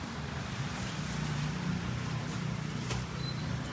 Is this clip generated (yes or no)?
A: yes